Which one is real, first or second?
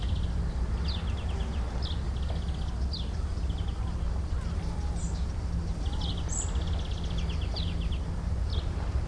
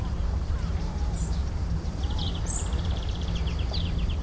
first